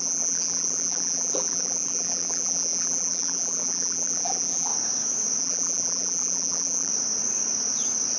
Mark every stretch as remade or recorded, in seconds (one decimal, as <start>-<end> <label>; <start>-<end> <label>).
0.0-4.7 remade; 4.7-5.4 recorded; 5.4-6.9 remade; 6.9-8.2 recorded